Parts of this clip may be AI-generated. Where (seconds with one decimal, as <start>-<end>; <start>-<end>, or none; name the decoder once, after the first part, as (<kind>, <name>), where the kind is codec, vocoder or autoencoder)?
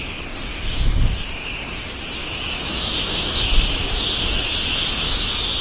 0.5-1.5 (autoencoder, DAC-VAE); 2.2-5.6